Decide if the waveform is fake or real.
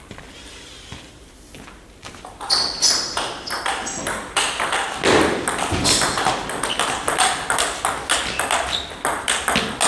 real